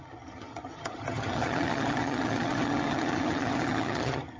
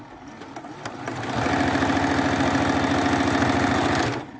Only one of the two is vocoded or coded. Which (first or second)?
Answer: first